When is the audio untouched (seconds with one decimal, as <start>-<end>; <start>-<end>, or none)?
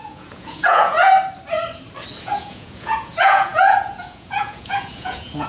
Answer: 1.1-2.2